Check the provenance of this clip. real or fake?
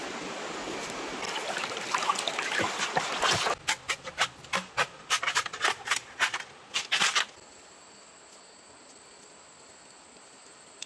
real